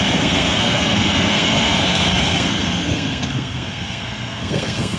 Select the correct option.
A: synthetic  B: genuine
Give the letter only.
A